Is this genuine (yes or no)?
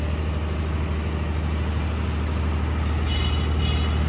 yes